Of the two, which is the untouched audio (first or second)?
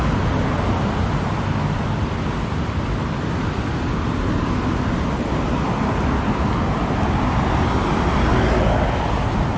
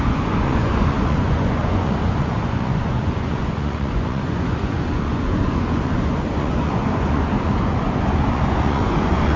first